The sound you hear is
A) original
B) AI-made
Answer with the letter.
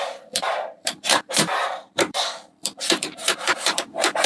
B